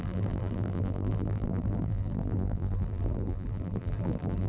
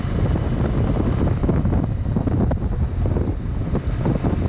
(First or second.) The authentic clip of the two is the second